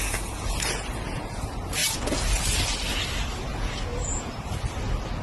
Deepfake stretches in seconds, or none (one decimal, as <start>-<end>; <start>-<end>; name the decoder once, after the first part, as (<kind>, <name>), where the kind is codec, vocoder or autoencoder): 0.0-1.4 (vocoder, Vocos); 1.8-2.4; 3.5-4.4